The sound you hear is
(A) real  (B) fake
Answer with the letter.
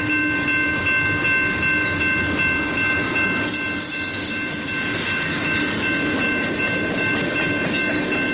A